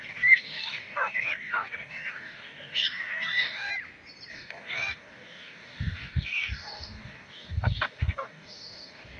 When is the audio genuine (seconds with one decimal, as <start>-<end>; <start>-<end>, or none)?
3.7-4.3

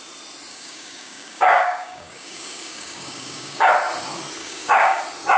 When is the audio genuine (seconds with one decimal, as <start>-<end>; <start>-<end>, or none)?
0.0-0.5; 3.7-4.4; 5.0-5.4

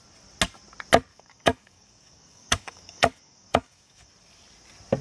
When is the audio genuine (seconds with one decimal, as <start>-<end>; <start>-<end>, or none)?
0.0-1.1; 4.1-5.0

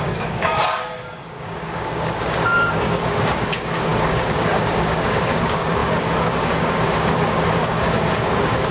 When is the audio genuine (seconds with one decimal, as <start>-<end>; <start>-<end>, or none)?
none

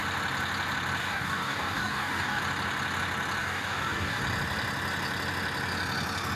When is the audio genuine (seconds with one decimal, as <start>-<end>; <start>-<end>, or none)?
0.0-1.0; 2.4-3.4; 4.2-6.4